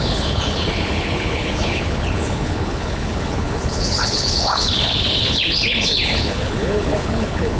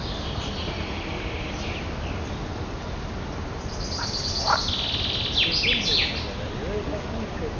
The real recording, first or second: second